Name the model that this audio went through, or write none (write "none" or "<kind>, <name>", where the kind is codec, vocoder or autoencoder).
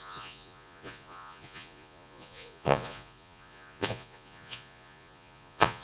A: vocoder, Vocos